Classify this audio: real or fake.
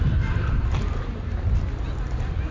real